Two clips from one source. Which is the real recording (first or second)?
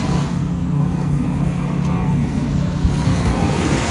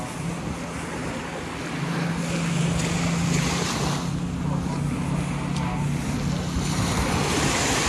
second